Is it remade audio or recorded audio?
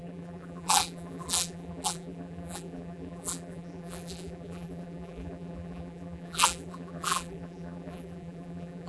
remade